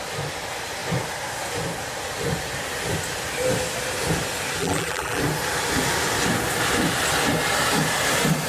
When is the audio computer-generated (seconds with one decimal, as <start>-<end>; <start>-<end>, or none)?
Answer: 4.6-5.2